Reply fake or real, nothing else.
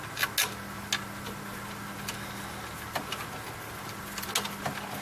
real